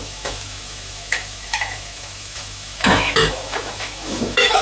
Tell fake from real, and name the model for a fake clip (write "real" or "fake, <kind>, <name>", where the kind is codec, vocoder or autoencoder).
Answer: fake, autoencoder, DAC-VAE